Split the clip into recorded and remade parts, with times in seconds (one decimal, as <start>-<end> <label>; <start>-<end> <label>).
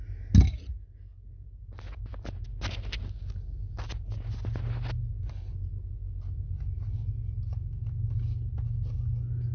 0.0-9.5 recorded